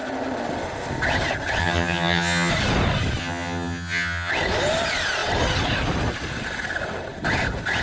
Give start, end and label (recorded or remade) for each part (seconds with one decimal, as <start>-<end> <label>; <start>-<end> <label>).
0.0-1.6 recorded; 1.6-2.5 remade; 2.5-3.2 recorded; 3.2-4.3 remade; 4.3-7.8 recorded